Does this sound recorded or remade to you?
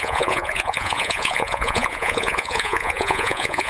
remade